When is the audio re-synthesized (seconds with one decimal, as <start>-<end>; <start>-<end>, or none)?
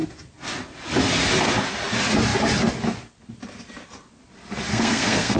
4.7-5.4